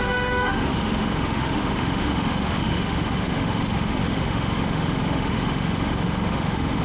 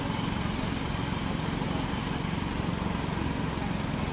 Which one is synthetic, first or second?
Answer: first